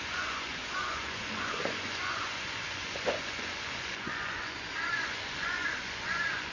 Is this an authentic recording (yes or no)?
no